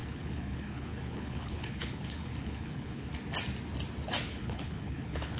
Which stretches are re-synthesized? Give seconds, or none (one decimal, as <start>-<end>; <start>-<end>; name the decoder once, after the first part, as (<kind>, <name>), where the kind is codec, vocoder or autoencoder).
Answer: 0.0-3.1 (codec, HILCodec); 4.3-5.4